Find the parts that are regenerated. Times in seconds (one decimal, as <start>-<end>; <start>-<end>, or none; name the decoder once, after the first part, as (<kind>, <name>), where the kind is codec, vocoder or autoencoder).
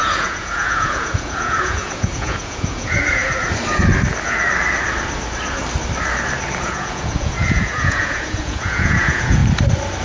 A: 0.0-3.2 (vocoder, Vocos); 6.6-9.4